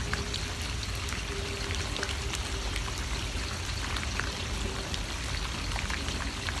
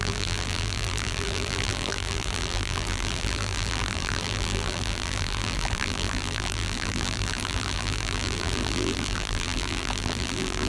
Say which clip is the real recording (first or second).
first